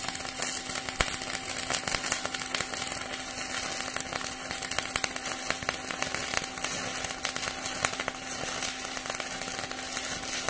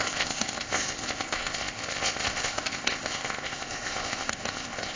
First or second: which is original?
first